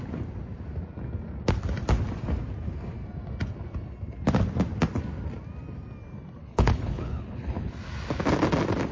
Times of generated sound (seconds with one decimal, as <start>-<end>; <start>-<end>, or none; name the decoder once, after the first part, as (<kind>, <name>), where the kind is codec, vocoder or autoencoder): 6.4-7.7 (codec, HILCodec)